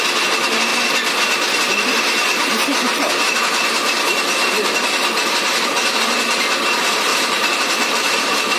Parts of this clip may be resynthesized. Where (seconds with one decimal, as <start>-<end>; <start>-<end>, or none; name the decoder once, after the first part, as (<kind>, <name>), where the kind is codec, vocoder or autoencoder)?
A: 7.1-8.2 (vocoder, BigVGAN v2)